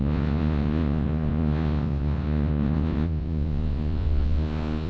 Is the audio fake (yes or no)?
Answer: yes